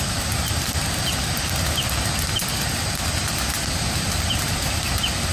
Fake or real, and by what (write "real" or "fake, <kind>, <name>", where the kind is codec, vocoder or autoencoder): real